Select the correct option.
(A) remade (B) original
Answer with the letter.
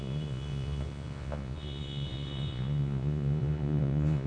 A